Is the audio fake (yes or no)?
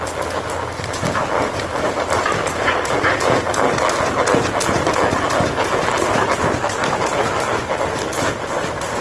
no